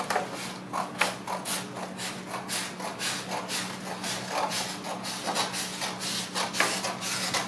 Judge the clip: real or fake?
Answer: real